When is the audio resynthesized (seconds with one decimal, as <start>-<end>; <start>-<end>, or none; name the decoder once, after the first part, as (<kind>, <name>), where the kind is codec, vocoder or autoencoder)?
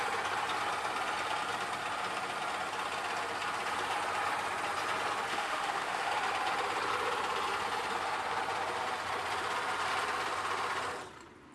5.3-6.1 (autoencoder, DAC-VAE)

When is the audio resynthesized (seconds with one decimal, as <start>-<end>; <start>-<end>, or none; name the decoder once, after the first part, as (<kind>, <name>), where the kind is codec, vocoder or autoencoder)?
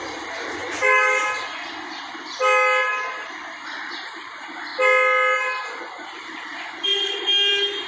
none